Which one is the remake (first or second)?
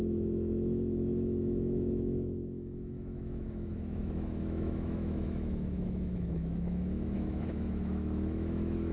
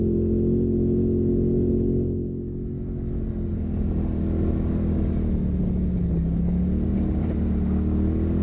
first